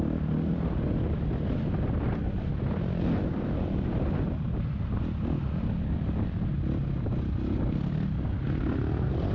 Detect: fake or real real